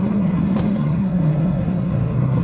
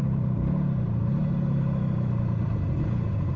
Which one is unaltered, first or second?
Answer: second